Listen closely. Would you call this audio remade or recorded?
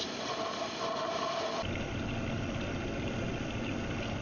recorded